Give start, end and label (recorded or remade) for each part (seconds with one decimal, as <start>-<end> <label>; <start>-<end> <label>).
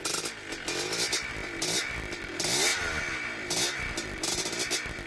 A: 0.0-5.1 recorded